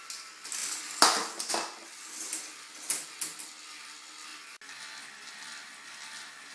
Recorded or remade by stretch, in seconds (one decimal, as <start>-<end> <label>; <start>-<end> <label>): 0.0-6.5 recorded